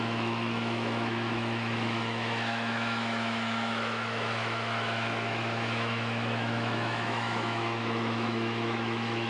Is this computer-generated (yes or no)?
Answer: yes